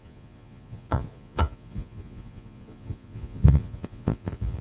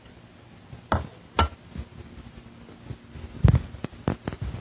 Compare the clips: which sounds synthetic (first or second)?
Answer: first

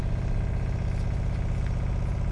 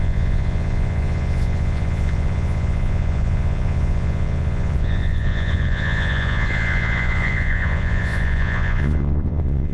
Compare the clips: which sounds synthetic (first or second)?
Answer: second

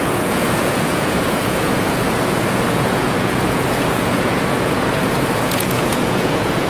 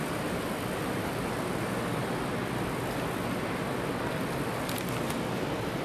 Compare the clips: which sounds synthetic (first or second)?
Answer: first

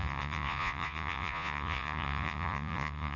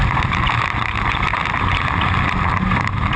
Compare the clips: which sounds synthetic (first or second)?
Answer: first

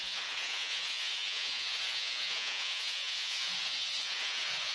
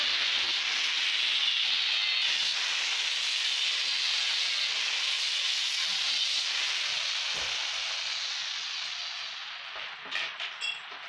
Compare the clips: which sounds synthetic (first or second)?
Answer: first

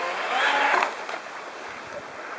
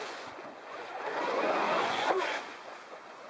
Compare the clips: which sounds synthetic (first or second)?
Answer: second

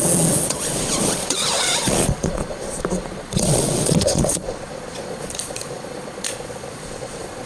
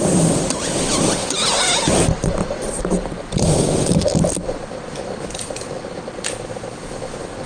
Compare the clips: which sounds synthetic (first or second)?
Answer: first